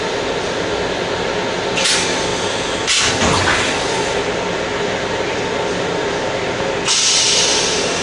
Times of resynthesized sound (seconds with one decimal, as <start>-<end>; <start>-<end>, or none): none